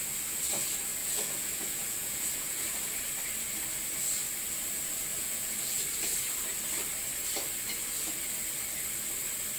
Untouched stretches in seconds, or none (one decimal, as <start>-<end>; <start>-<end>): 0.0-1.0; 2.7-5.1; 5.8-9.6